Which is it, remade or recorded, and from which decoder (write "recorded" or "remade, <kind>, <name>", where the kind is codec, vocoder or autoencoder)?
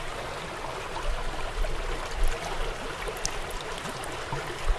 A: recorded